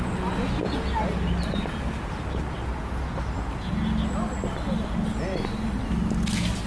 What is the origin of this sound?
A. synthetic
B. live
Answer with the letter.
B